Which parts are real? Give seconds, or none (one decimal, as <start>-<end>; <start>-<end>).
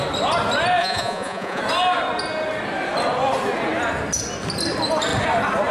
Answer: 0.0-0.8; 1.6-5.7